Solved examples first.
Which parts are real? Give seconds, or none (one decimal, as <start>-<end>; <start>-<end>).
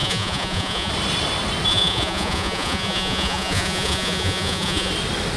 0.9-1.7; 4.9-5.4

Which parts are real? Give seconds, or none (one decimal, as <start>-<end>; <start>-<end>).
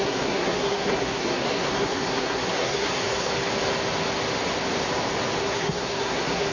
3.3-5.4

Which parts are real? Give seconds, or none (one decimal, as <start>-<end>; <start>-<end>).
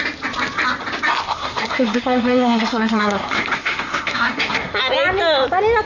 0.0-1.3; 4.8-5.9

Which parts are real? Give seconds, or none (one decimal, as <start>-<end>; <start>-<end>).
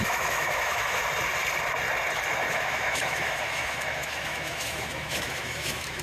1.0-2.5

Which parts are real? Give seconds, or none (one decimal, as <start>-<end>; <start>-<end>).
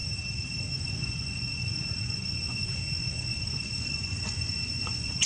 0.0-0.8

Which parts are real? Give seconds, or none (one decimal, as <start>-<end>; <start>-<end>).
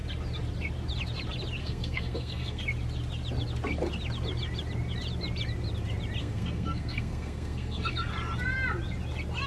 0.0-1.6; 2.6-6.2; 8.1-9.5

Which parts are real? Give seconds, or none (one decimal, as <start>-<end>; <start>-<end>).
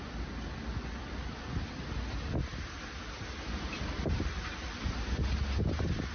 0.0-6.1